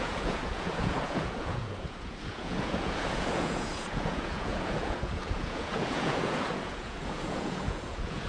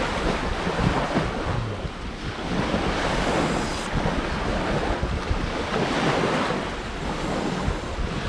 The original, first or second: second